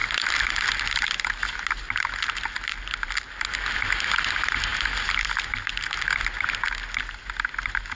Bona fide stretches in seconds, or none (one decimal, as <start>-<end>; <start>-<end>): 0.0-8.0